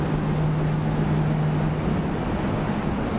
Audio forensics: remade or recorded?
recorded